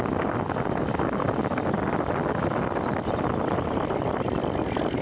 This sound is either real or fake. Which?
real